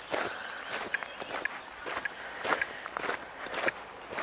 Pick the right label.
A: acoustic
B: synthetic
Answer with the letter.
A